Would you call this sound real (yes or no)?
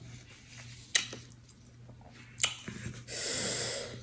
yes